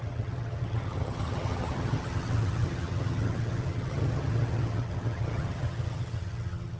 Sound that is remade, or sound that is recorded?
remade